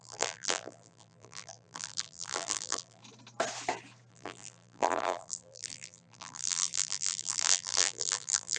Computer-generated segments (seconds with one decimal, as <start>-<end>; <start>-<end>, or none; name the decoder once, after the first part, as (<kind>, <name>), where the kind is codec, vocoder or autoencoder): 0.0-3.0 (vocoder, BigVGAN v2); 4.1-8.6